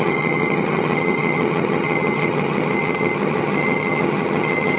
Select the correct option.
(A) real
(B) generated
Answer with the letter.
B